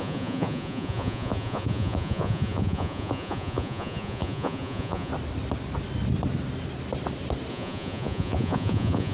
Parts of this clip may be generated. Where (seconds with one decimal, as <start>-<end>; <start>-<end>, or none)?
0.0-5.1; 7.5-9.1